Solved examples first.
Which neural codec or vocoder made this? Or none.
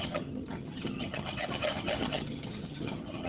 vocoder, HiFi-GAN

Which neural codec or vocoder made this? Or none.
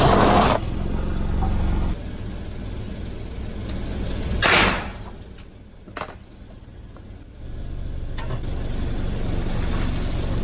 none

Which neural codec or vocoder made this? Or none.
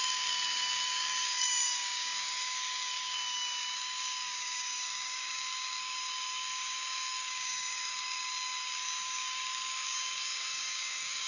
codec, DAC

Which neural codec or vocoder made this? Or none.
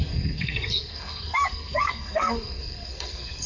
codec, SNAC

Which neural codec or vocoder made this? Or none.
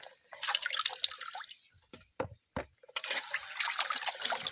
none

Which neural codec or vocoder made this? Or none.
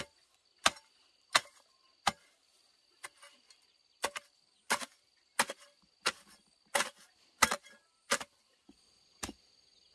none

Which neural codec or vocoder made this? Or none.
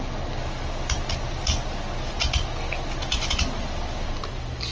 none